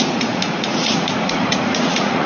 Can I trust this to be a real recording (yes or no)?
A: no